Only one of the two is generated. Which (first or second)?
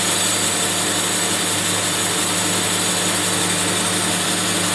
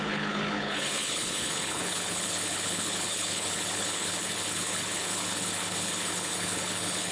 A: second